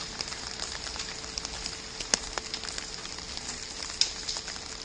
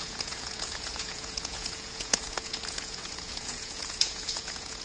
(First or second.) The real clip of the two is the first